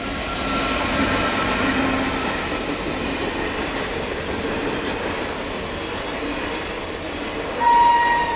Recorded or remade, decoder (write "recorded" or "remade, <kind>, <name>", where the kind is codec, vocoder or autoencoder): recorded